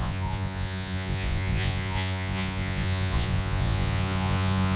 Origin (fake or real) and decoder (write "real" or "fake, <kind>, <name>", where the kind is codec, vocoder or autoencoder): fake, vocoder, Vocos